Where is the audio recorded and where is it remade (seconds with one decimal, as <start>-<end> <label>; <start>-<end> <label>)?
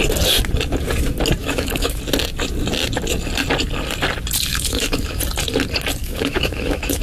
0.0-1.4 recorded; 1.4-2.0 remade; 2.0-4.5 recorded; 4.5-5.2 remade; 5.2-6.0 recorded; 6.0-7.0 remade